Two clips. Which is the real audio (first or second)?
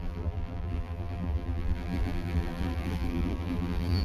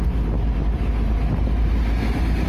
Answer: second